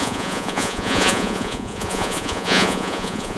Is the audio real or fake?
fake